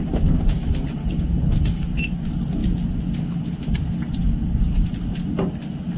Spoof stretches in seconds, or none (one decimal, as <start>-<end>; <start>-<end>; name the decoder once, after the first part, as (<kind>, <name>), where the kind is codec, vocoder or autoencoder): none